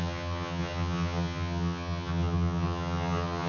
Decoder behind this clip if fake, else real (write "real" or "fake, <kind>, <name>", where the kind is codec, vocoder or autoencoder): fake, vocoder, HiFi-GAN